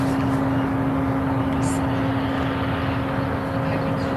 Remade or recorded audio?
recorded